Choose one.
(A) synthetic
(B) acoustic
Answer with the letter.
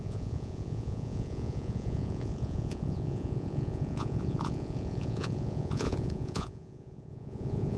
A